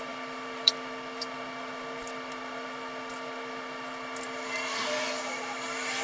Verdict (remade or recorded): remade